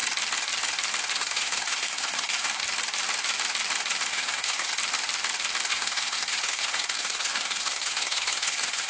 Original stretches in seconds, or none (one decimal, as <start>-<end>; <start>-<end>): 0.0-1.1; 2.6-4.1; 4.7-5.7